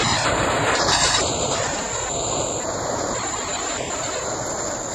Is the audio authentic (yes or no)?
no